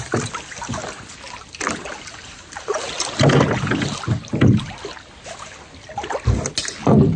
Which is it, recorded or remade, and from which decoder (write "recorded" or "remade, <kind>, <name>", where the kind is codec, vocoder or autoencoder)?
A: recorded